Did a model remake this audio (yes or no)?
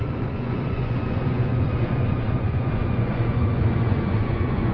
yes